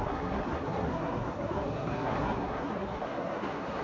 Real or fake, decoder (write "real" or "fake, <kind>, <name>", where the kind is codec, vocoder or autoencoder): fake, codec, SNAC